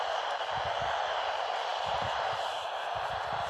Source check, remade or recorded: recorded